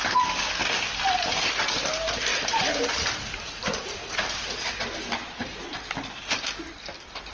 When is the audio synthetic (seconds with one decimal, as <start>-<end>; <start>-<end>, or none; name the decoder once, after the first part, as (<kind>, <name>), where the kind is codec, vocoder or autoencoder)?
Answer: 2.3-5.0 (vocoder, BigVGAN v2)